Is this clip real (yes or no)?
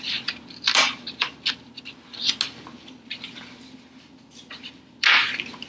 yes